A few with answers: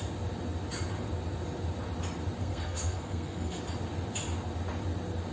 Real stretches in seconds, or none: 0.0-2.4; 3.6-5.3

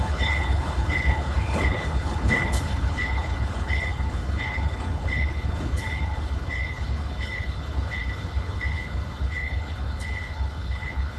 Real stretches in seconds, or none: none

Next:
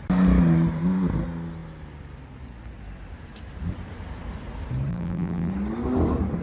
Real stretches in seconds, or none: 0.0-4.9; 5.5-6.4

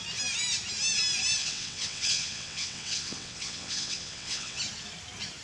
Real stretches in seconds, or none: 0.0-1.4; 4.6-5.4

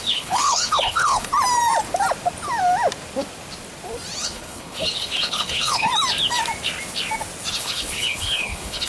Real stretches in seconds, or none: 1.3-4.2; 5.9-7.5

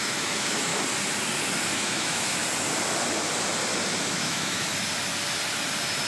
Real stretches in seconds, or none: 0.7-1.7; 2.4-4.0; 4.7-6.1

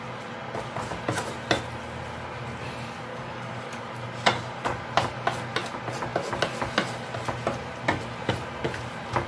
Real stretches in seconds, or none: 0.0-3.1; 3.8-9.3

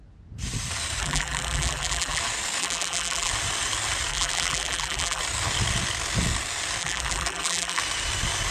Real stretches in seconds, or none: 0.0-1.0; 2.2-2.6; 3.3-4.1; 5.2-6.8; 7.8-8.5